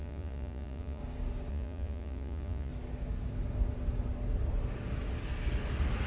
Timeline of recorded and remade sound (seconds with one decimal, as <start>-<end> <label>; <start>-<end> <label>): 0.0-1.0 remade; 1.0-1.5 recorded; 1.5-2.7 remade; 2.7-6.1 recorded

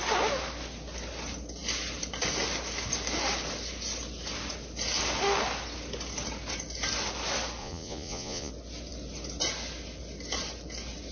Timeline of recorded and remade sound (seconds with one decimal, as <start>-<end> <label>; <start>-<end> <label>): 0.0-7.6 recorded; 7.6-8.5 remade; 8.5-11.1 recorded

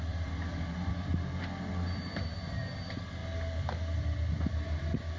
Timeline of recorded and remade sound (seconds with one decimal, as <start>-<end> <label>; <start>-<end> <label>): 0.0-1.1 remade; 1.1-1.7 recorded; 1.7-3.2 remade; 3.2-4.3 recorded; 4.3-5.2 remade

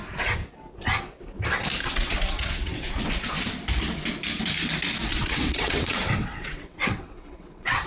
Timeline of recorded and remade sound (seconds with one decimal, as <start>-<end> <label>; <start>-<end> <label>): 0.0-1.8 recorded; 1.8-3.4 remade; 3.4-5.1 recorded; 5.1-7.9 remade